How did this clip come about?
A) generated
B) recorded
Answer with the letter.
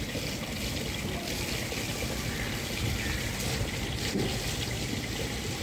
B